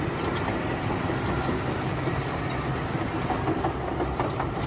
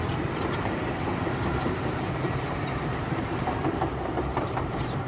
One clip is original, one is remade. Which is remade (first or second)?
second